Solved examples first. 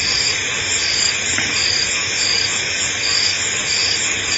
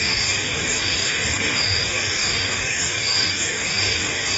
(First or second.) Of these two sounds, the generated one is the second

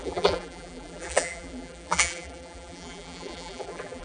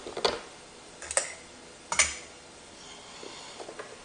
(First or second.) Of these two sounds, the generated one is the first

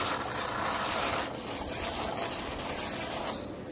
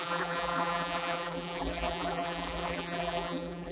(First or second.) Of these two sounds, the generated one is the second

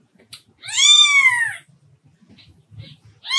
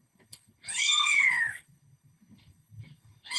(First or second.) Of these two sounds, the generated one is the second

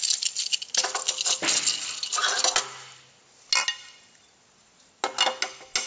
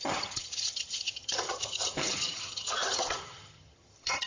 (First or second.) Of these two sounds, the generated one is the second